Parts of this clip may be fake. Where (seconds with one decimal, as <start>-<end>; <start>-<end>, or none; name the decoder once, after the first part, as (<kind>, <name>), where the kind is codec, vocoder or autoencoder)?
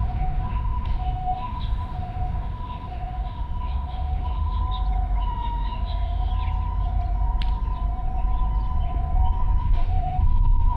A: 0.0-4.6 (autoencoder, DAC-VAE); 5.2-6.3; 9.6-10.8